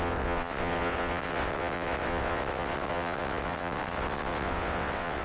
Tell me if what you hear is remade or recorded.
remade